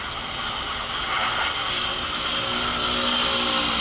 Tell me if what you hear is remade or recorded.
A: recorded